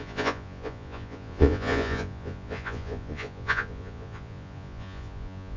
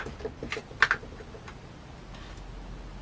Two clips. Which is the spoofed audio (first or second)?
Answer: first